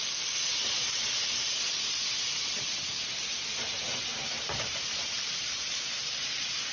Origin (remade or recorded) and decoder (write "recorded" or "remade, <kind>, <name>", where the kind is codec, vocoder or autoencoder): remade, vocoder, BigVGAN v2